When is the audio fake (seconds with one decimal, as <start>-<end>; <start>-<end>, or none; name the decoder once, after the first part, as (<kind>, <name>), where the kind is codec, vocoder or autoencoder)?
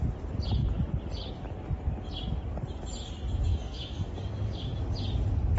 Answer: 3.5-4.8 (codec, DAC)